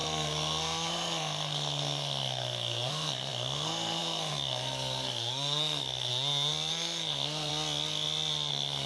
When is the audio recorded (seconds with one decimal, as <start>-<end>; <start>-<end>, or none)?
6.1-6.7; 7.5-8.5